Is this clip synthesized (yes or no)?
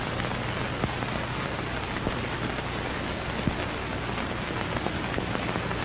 no